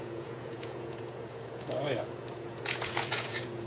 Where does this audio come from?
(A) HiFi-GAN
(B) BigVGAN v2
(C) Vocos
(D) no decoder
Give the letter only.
C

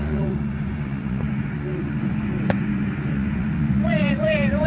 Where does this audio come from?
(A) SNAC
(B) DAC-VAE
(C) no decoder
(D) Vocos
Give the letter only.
D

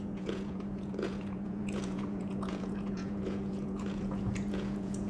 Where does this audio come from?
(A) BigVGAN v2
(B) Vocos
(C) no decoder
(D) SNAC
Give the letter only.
B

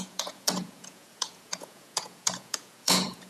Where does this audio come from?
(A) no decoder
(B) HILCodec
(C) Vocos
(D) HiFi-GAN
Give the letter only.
C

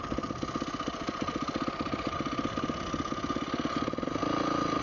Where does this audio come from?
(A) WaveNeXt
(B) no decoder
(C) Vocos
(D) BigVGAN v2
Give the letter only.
B